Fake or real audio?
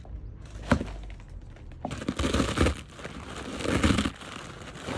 real